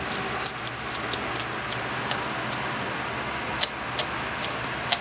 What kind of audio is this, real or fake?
real